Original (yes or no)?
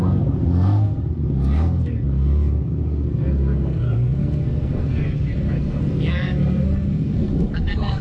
no